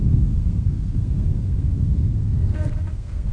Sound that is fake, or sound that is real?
fake